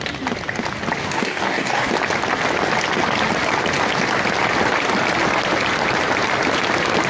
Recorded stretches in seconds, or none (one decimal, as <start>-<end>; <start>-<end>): 0.0-1.0; 1.9-7.1